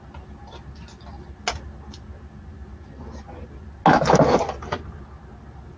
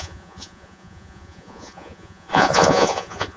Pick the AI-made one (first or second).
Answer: second